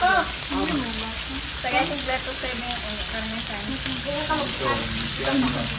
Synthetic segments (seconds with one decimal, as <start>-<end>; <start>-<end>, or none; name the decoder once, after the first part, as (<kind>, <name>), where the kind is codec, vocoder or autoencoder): none